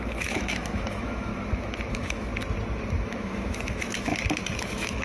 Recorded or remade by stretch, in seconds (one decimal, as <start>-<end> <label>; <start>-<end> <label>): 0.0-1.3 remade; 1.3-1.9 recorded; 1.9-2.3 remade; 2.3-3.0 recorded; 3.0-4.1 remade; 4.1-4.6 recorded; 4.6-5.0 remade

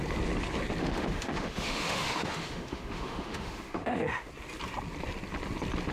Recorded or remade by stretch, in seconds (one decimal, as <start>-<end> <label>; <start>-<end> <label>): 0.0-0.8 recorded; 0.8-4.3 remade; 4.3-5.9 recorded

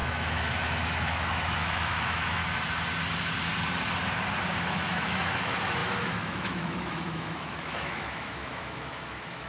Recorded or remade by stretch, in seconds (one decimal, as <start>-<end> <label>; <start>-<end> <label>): 0.0-2.4 remade; 2.4-4.6 recorded; 4.6-9.5 remade

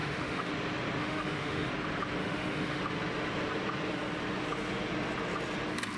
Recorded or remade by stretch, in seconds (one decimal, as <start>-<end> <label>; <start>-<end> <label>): 0.0-0.5 remade; 0.5-1.0 recorded; 1.0-1.7 remade; 1.7-2.2 recorded; 2.2-2.8 remade; 2.8-6.0 recorded

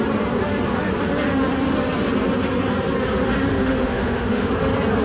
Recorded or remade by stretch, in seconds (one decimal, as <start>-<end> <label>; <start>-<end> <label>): 0.0-3.5 recorded; 3.5-4.5 remade; 4.5-5.0 recorded

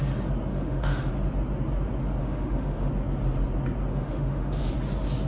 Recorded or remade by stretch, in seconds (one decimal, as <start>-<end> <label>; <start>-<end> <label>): 0.0-0.5 recorded; 0.5-1.1 remade; 1.1-2.2 recorded; 2.2-2.9 remade; 2.9-3.9 recorded; 3.9-4.7 remade; 4.7-5.3 recorded